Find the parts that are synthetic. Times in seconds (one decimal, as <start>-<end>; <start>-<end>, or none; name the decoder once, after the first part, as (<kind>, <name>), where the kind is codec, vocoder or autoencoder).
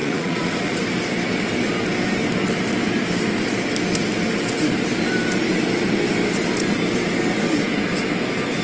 0.0-0.8 (vocoder, Vocos)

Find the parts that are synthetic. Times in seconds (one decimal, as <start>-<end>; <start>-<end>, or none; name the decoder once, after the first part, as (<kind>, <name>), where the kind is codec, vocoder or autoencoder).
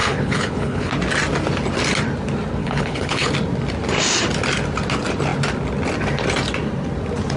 0.0-0.9 (codec, HILCodec); 2.6-3.3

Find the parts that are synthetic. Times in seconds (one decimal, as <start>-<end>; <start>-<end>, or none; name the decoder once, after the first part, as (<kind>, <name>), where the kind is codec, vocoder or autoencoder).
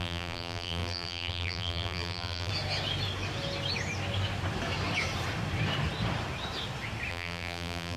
0.0-2.5 (vocoder, BigVGAN v2); 7.1-8.0